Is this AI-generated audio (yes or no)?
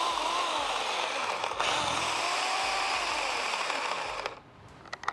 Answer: no